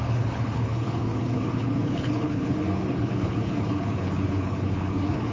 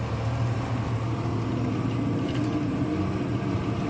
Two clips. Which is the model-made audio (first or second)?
first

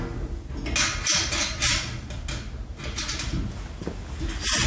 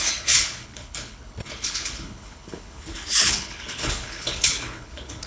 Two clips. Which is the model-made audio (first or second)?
second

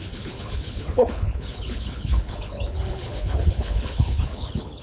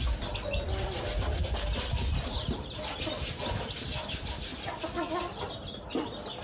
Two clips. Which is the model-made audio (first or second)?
first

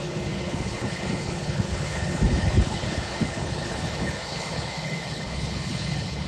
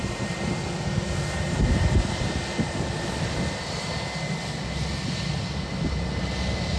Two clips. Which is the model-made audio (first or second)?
first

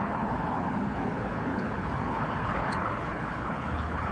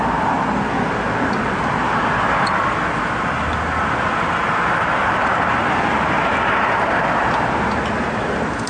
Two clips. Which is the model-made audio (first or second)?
first